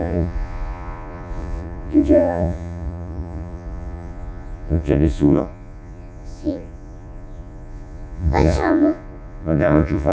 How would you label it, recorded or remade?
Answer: remade